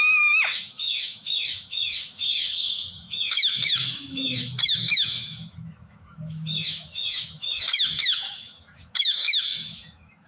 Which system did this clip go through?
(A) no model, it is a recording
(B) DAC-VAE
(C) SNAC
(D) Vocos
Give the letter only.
B